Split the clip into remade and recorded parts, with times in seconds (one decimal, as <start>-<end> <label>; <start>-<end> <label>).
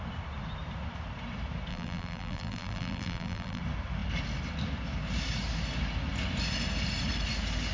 0.0-1.7 recorded; 1.7-3.6 remade; 3.6-7.7 recorded